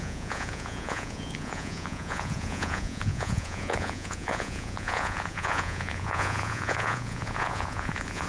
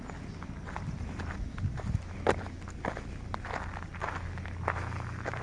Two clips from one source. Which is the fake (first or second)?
first